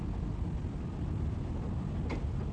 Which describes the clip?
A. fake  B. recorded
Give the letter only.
B